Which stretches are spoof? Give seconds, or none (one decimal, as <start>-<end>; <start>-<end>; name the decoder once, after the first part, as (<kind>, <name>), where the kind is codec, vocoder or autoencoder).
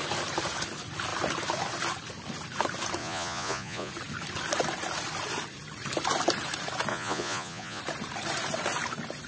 3.0-3.9 (vocoder, Vocos); 6.9-7.8